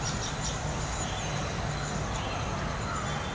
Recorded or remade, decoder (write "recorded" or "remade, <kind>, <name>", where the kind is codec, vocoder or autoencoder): recorded